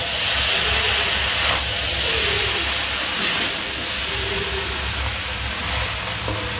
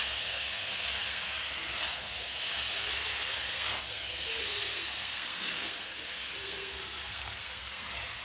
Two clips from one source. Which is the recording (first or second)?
first